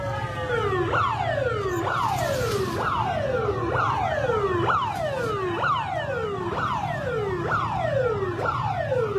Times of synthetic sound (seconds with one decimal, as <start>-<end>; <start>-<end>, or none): none